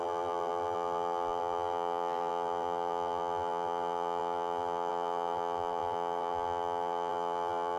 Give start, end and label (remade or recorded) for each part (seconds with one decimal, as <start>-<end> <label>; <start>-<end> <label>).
0.0-7.8 remade